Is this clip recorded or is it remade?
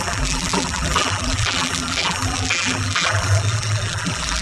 remade